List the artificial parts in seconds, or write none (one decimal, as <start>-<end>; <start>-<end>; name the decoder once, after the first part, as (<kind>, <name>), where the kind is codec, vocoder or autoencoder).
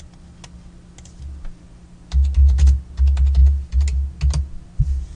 none